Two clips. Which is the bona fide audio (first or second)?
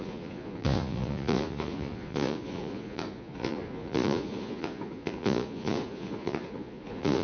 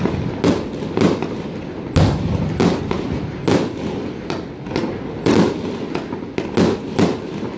second